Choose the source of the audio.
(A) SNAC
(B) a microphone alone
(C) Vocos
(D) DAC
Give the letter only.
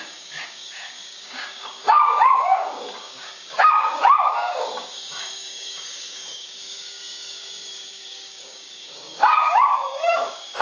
D